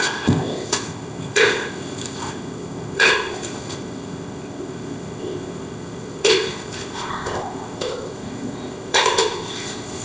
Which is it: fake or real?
fake